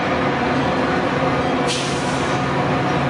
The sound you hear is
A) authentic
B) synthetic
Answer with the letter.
A